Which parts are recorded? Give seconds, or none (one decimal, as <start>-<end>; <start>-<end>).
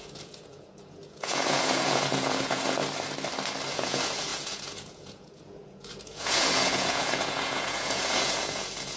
2.8-3.7